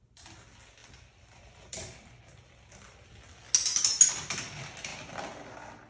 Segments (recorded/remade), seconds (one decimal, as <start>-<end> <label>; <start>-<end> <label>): 0.0-0.8 recorded; 0.8-3.1 remade; 3.1-5.9 recorded